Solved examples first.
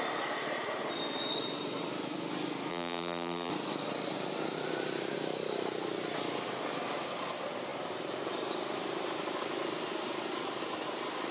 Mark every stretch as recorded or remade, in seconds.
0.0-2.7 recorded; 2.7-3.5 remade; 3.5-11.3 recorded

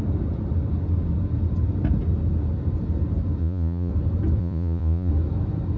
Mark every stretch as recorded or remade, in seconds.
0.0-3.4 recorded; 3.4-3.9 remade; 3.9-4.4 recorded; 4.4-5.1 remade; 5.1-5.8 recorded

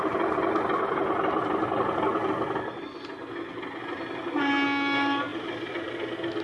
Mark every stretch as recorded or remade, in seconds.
0.0-6.4 recorded

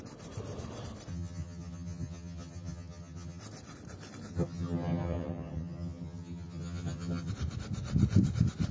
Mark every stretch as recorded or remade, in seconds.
0.0-1.1 recorded; 1.1-3.4 remade; 3.4-4.3 recorded; 4.3-7.3 remade; 7.3-8.7 recorded

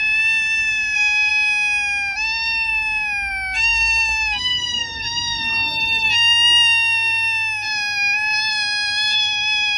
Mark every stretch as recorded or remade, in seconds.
0.0-9.8 recorded

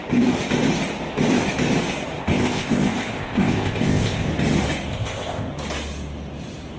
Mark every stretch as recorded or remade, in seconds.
0.0-2.2 recorded; 2.2-4.3 remade; 4.3-4.9 recorded; 4.9-5.5 remade; 5.5-6.8 recorded

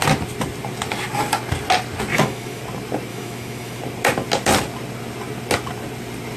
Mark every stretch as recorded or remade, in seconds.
0.0-2.1 recorded; 2.1-2.6 remade; 2.6-3.1 recorded; 3.1-3.8 remade; 3.8-6.4 recorded

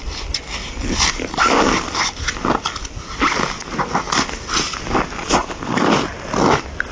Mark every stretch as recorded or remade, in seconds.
0.0-0.6 recorded; 0.6-1.1 remade; 1.1-5.4 recorded; 5.4-6.1 remade; 6.1-6.9 recorded